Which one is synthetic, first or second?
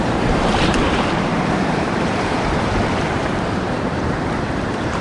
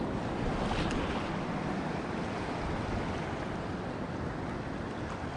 first